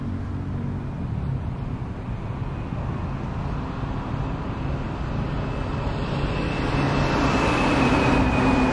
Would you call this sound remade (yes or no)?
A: no